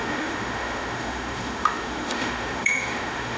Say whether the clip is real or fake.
fake